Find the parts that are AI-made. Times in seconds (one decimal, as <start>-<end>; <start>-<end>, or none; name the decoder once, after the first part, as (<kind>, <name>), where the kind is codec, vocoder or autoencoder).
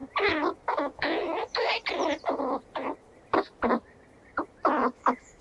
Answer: 0.7-1.7 (autoencoder, DAC-VAE); 4.9-5.4